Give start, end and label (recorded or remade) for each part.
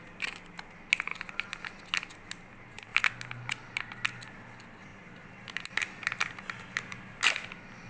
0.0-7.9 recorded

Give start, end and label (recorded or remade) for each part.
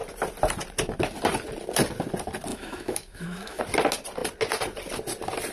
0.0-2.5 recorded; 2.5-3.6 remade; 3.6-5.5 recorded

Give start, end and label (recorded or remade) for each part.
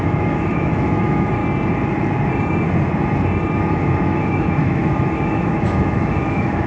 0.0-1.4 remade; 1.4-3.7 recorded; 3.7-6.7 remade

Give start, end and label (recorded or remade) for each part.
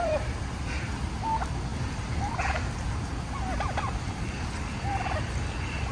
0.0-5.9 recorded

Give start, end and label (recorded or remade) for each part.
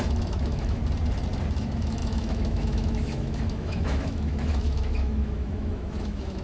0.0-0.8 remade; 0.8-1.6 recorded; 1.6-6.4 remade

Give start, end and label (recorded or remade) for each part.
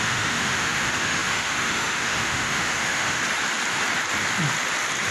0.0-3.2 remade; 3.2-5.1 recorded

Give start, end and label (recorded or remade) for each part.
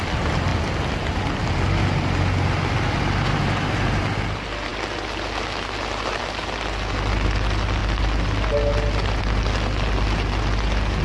0.0-11.0 recorded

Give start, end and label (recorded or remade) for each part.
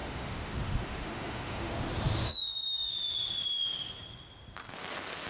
0.0-1.8 remade; 1.8-2.2 recorded; 2.2-2.9 remade; 2.9-5.3 recorded